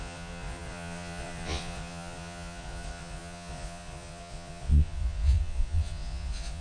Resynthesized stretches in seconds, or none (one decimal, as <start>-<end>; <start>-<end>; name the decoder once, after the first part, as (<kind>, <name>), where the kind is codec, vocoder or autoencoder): 0.0-6.6 (vocoder, Vocos)